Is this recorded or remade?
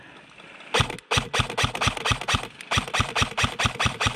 recorded